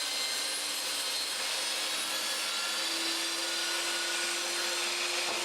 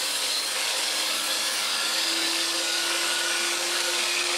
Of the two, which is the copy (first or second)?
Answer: second